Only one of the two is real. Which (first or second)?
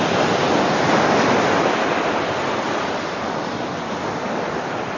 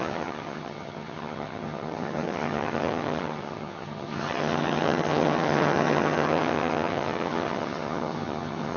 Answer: first